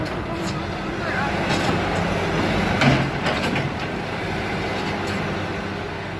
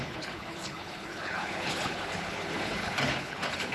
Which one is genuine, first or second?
first